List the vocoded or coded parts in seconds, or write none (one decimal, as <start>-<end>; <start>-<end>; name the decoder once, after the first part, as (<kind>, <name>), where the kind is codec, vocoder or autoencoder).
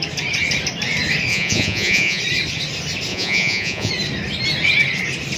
1.3-2.2 (vocoder, Vocos); 3.1-3.9